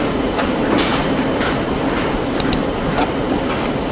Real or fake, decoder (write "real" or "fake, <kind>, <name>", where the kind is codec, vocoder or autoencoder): fake, vocoder, BigVGAN v2